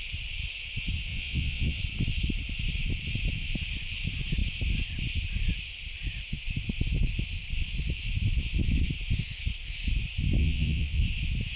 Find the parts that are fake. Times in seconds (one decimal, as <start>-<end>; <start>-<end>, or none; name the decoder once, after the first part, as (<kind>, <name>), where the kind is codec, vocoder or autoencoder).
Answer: 1.1-1.8 (vocoder, WaveNeXt); 10.4-11.0

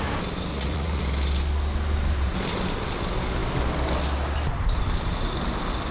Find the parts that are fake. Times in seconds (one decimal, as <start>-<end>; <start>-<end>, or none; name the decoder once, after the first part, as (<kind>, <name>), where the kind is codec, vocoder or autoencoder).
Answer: 0.5-1.0 (vocoder, Vocos)

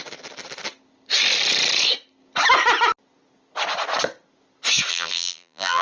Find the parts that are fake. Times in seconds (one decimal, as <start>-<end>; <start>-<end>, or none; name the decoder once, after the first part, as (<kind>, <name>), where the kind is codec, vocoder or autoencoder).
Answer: 4.9-5.8 (vocoder, BigVGAN v2)

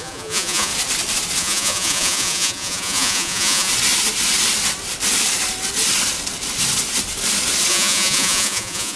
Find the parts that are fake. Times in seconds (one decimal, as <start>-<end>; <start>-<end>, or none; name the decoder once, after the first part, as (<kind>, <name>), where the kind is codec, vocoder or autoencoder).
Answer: 0.0-0.7 (vocoder, Vocos); 1.4-3.7; 7.7-9.0

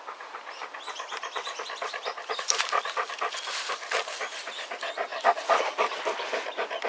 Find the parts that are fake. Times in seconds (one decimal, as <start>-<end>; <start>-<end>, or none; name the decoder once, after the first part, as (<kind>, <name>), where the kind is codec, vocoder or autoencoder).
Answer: 0.6-4.6 (vocoder, BigVGAN v2)

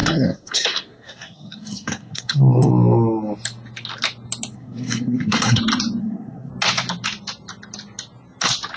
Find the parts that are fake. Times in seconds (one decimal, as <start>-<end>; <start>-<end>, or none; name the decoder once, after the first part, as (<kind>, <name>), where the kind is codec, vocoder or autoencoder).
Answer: 0.0-2.7 (codec, SNAC); 4.5-5.6; 6.0-6.5

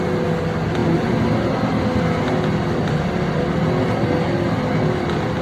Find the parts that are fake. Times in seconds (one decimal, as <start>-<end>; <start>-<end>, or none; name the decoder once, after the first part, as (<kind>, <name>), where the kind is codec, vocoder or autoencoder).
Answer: none